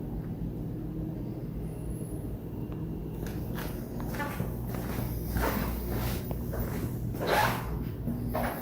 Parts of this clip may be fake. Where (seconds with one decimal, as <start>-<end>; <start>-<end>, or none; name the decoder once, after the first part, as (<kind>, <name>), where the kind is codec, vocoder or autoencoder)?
5.6-6.2 (codec, DAC); 7.4-8.1